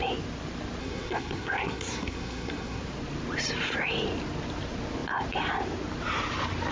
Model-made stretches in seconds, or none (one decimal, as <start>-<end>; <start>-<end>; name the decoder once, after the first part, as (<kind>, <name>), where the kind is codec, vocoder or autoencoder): 0.8-2.8 (codec, SNAC)